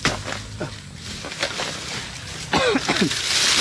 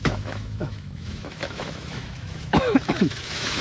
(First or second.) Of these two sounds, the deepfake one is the second